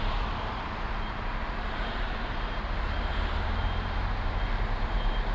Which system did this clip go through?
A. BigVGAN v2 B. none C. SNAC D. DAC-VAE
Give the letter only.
A